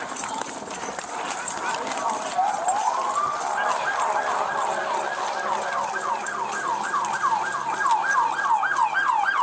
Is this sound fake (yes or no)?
no